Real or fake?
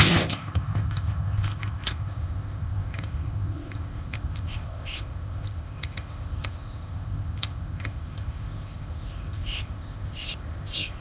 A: fake